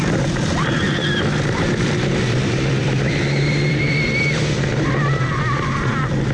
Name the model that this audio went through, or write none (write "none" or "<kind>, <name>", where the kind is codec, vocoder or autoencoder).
vocoder, BigVGAN v2